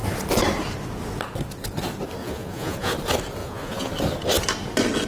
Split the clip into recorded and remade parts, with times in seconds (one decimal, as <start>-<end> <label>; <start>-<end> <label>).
0.0-2.2 recorded; 2.2-2.9 remade; 2.9-3.4 recorded; 3.4-3.9 remade; 3.9-5.1 recorded